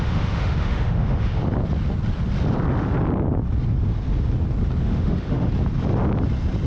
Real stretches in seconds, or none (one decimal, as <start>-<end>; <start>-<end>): 1.4-4.8; 5.5-6.7

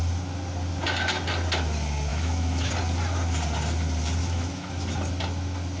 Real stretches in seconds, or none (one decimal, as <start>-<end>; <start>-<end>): 0.0-2.1; 2.7-4.2; 4.7-5.8

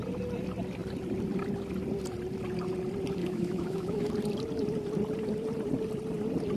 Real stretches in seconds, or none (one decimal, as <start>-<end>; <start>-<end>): 0.0-3.2; 4.1-6.6